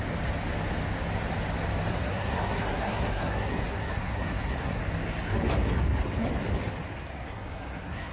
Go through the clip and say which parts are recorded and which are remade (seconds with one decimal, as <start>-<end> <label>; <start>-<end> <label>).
0.0-1.9 recorded; 1.9-4.8 remade; 4.8-7.1 recorded; 7.1-8.1 remade